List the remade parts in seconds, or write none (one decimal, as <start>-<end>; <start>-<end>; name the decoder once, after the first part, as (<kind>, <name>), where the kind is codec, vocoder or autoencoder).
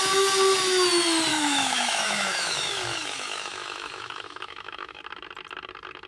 1.3-5.0 (autoencoder, DAC-VAE)